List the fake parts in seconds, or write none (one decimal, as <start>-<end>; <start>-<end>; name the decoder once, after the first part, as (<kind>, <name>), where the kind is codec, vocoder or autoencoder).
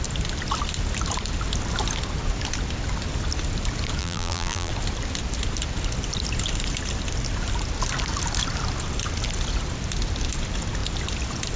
4.0-4.7 (vocoder, BigVGAN v2)